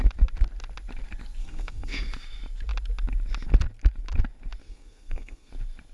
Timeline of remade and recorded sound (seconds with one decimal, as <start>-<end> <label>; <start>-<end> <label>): 0.0-1.4 recorded; 1.4-2.1 remade; 2.1-4.6 recorded; 4.6-5.5 remade; 5.5-5.9 recorded